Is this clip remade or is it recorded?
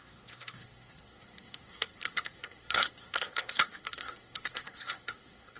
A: remade